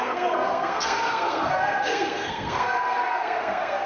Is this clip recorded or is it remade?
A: remade